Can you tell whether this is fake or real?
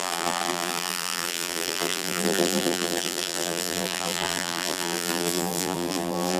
fake